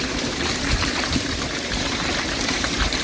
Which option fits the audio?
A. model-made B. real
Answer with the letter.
A